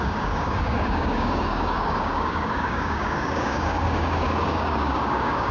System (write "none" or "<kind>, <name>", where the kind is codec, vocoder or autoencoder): codec, DAC